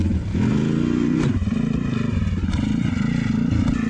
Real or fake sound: real